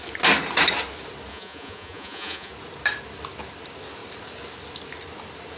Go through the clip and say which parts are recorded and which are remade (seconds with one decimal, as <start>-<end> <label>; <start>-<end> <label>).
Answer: 0.0-1.3 recorded; 1.3-2.5 remade; 2.5-5.6 recorded